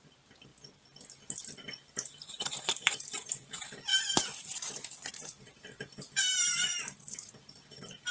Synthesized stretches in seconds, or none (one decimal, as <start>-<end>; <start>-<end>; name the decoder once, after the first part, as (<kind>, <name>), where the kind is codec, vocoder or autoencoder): 0.0-0.5 (vocoder, BigVGAN v2); 1.9-8.1